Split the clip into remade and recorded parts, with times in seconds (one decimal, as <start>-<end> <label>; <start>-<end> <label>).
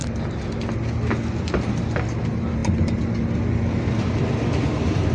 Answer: 0.0-5.1 recorded